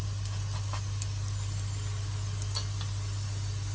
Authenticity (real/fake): real